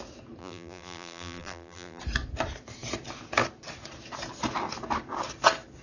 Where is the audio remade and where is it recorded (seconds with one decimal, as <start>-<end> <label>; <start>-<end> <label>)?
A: 0.0-0.4 recorded; 0.4-2.0 remade; 2.0-5.8 recorded